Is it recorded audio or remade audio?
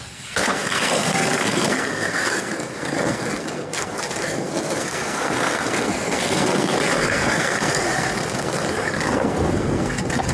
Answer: remade